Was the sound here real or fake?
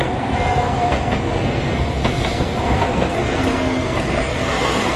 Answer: fake